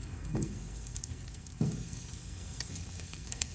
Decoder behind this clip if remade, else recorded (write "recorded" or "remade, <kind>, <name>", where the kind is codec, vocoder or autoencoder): remade, codec, SNAC